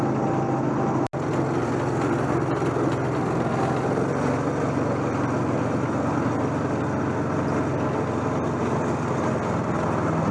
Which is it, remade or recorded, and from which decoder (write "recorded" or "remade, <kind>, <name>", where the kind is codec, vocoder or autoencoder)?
recorded